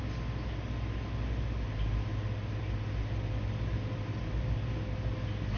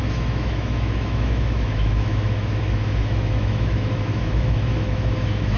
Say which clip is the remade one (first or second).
second